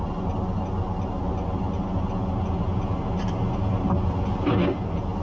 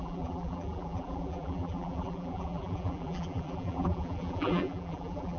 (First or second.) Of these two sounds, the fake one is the second